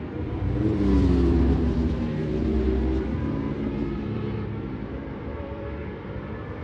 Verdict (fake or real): fake